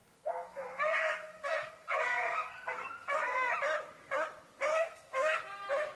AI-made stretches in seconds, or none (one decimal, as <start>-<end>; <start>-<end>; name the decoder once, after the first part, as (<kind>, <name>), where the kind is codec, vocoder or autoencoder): 0.0-3.5 (codec, SNAC); 4.7-5.4